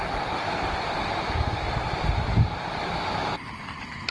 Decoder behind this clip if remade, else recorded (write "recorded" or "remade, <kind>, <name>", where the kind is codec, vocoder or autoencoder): recorded